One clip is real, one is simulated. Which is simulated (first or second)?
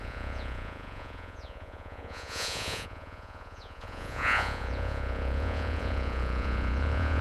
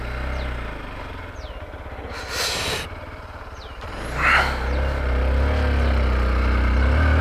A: first